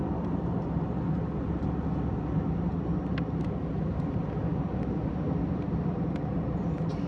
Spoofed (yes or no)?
no